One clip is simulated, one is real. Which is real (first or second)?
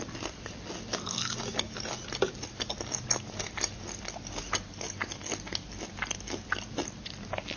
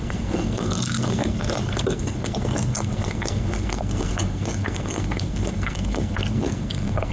first